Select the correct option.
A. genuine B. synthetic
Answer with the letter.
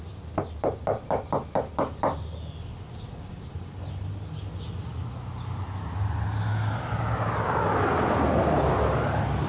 A